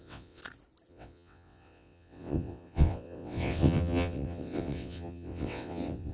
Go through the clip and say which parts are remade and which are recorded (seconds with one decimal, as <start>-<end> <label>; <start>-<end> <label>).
0.0-0.4 remade; 0.4-0.9 recorded; 0.9-6.1 remade